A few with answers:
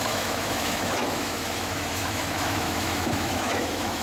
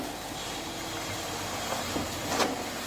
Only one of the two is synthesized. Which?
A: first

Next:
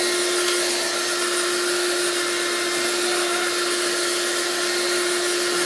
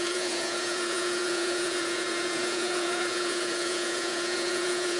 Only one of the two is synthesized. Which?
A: second